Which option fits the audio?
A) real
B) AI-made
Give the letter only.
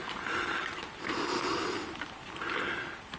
A